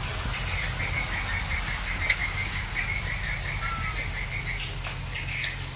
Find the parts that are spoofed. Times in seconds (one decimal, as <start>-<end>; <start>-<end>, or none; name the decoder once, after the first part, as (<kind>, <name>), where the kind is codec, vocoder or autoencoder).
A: 2.2-2.8 (codec, DAC)